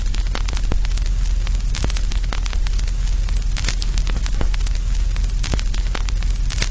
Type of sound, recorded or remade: recorded